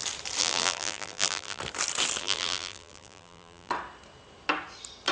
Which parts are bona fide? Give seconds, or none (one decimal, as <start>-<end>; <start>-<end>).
0.0-0.4; 1.6-2.2; 3.7-5.1